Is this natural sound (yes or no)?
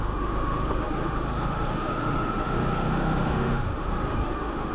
no